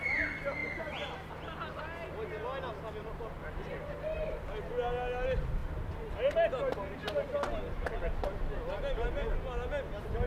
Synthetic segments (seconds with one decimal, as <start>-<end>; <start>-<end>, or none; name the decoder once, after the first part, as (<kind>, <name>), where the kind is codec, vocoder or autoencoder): none